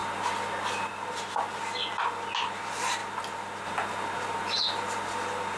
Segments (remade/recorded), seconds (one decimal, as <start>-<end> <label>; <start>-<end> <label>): 0.0-5.6 recorded